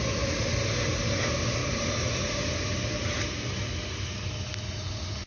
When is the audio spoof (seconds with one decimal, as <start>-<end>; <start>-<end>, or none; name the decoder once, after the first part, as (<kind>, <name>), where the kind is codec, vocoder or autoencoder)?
none